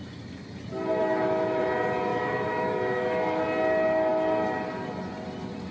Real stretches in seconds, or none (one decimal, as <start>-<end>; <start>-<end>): 0.0-1.0; 1.6-2.1; 3.4-5.7